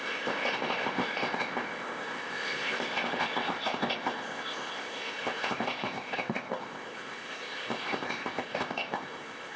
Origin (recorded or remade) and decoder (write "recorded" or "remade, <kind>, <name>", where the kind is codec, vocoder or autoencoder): remade, codec, ZipCodec